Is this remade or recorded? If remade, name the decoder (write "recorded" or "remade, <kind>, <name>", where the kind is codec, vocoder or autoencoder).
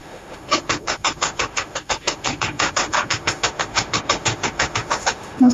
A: remade, autoencoder, DAC-VAE